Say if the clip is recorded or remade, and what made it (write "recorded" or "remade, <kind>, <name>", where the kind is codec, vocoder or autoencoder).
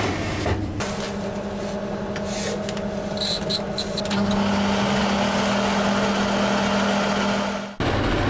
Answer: recorded